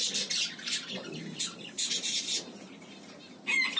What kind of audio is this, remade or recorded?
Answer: recorded